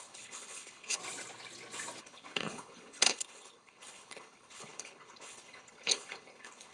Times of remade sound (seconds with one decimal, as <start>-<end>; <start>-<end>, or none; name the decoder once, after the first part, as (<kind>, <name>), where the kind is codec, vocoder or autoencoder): 0.0-1.0 (codec, HILCodec); 2.0-6.7